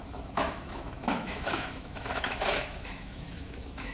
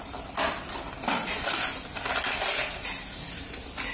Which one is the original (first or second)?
second